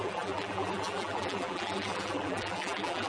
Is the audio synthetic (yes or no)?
yes